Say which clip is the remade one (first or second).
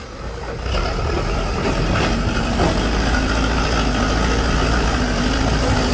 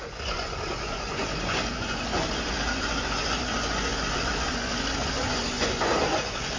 second